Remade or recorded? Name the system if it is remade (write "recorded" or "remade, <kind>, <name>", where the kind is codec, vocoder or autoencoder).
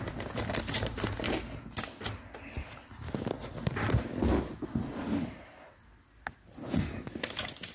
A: recorded